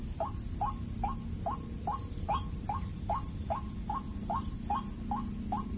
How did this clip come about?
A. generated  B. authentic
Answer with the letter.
B